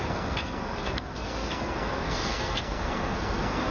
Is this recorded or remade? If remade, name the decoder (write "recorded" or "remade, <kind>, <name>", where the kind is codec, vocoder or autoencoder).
remade, codec, SNAC